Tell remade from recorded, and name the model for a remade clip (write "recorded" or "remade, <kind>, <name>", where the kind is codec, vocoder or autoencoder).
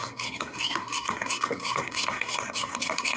remade, codec, SNAC